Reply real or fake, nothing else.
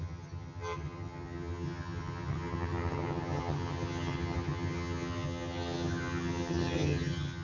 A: fake